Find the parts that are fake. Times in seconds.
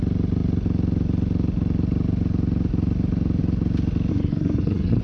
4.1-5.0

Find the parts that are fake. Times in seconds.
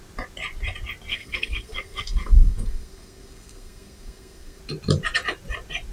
1.1-4.6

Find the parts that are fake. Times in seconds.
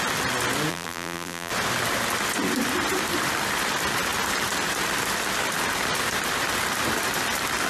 0.7-1.5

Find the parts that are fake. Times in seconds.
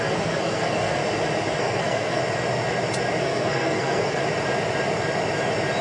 0.0-1.0; 1.6-2.2; 3.2-4.2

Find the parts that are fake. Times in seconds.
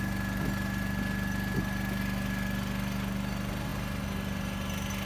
none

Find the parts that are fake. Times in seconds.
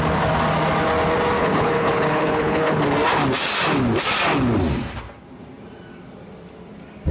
1.4-2.8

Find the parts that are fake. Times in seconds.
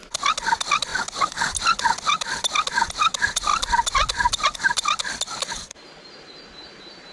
none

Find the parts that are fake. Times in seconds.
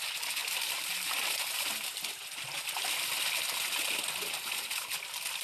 none